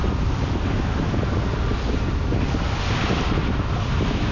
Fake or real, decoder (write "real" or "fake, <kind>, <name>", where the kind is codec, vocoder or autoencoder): real